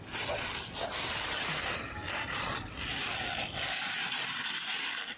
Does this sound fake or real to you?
real